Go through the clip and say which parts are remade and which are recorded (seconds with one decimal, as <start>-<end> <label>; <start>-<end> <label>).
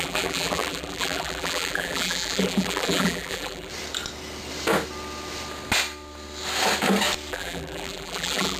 0.0-3.7 remade; 3.7-7.3 recorded; 7.3-8.6 remade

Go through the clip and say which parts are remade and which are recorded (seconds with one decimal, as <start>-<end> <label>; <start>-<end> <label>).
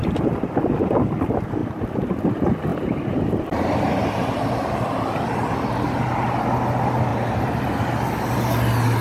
0.0-2.7 recorded; 2.7-3.9 remade; 3.9-7.1 recorded; 7.1-7.6 remade; 7.6-9.0 recorded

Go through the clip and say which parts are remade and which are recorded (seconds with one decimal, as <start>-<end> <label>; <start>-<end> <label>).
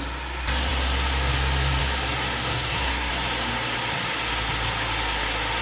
0.0-2.5 recorded; 2.5-3.1 remade; 3.1-5.6 recorded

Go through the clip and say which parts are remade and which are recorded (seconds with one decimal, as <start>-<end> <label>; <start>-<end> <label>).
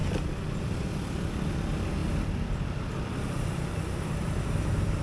0.0-1.3 remade; 1.3-2.0 recorded; 2.0-5.0 remade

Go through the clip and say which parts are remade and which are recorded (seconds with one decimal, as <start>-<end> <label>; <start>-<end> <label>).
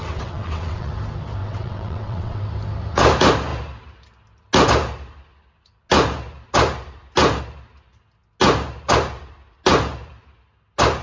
0.0-0.9 remade; 0.9-1.4 recorded; 1.4-2.4 remade; 2.4-11.0 recorded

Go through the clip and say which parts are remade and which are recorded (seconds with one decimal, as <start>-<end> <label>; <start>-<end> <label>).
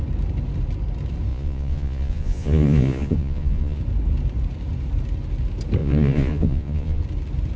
0.0-1.3 recorded; 1.3-3.8 remade; 3.8-5.8 recorded; 5.8-7.0 remade; 7.0-7.6 recorded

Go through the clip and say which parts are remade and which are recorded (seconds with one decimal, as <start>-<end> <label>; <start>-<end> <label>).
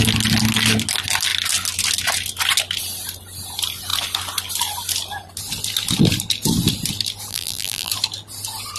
0.0-7.3 recorded; 7.3-7.9 remade; 7.9-8.8 recorded